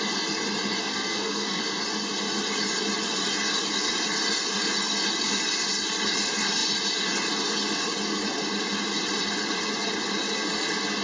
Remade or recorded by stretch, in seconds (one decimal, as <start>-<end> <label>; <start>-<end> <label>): 0.0-0.8 recorded; 0.8-1.6 remade; 1.6-11.0 recorded